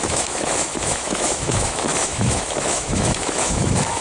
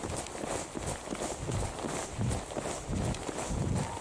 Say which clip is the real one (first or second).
second